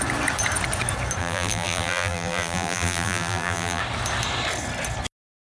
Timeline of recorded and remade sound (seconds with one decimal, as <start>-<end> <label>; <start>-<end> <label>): 0.0-1.2 recorded; 1.2-3.8 remade; 3.8-5.5 recorded